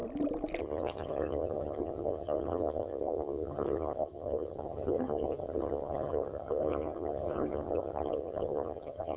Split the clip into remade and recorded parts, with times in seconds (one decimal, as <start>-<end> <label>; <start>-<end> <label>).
0.0-0.6 recorded; 0.6-9.2 remade